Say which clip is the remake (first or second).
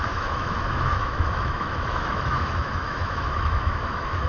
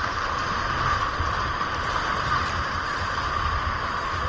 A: first